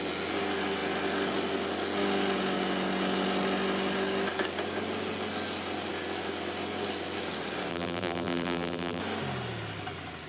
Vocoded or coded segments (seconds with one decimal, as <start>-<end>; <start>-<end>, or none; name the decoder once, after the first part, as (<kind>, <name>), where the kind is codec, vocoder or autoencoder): 7.7-9.0 (vocoder, BigVGAN v2)